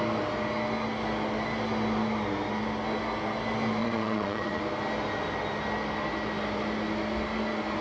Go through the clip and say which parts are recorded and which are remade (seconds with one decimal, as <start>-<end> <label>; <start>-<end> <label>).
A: 0.0-3.8 recorded; 3.8-4.6 remade; 4.6-7.8 recorded